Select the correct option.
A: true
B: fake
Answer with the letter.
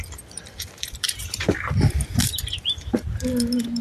B